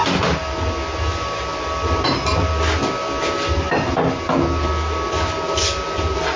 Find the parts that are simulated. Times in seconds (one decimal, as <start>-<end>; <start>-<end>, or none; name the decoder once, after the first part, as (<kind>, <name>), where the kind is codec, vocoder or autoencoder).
none